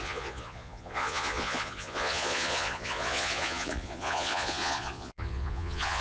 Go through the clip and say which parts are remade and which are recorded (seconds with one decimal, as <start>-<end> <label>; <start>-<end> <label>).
0.0-6.0 remade